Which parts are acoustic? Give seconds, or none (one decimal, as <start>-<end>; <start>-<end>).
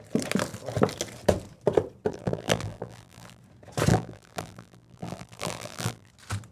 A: 0.0-2.1; 3.4-3.9; 6.1-6.5